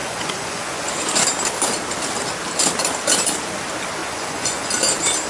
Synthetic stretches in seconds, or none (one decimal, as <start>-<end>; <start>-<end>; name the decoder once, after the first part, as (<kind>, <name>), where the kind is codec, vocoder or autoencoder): 0.0-0.9 (vocoder, Vocos); 4.0-4.7